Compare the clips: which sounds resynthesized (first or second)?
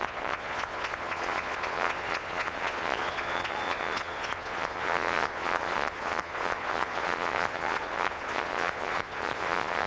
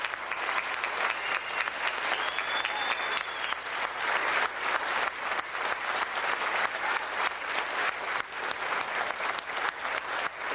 first